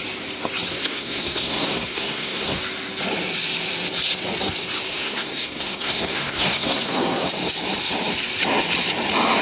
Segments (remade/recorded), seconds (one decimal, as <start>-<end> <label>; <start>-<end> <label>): 0.0-0.7 recorded; 0.7-2.6 remade; 2.6-4.9 recorded; 4.9-7.3 remade; 7.3-9.4 recorded